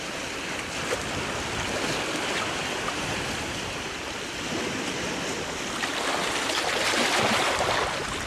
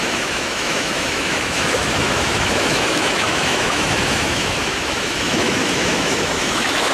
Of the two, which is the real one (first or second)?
first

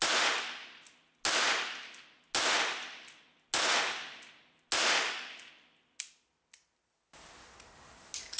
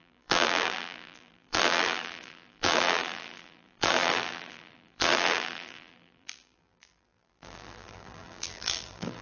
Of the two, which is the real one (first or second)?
first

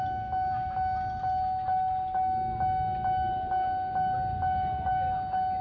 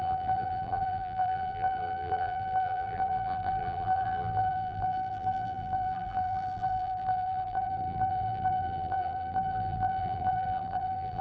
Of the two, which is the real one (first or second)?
first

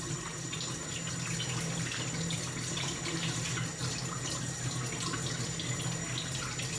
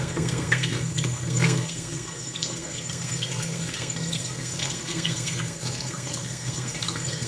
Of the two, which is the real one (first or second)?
first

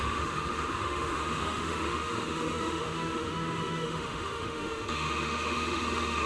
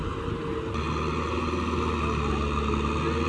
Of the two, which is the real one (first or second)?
second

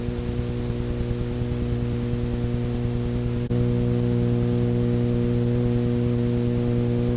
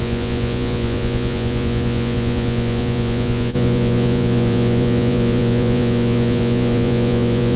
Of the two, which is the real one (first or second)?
first